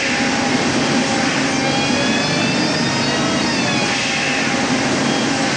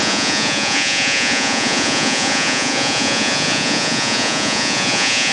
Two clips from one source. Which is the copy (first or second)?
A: second